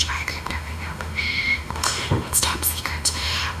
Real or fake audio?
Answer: fake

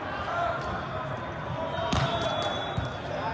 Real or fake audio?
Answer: real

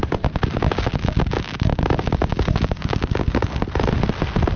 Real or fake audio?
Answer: real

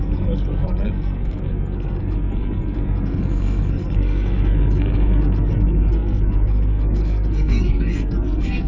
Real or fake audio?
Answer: fake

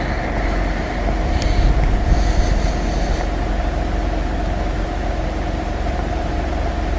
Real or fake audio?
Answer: real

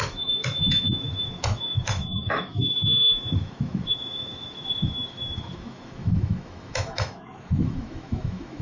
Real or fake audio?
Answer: fake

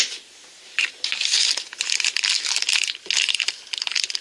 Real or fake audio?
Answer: real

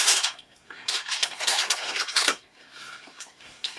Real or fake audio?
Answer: fake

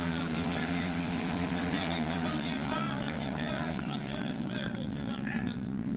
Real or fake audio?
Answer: fake